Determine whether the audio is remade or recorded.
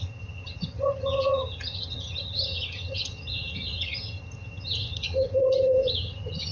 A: remade